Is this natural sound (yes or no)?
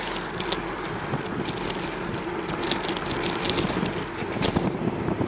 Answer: yes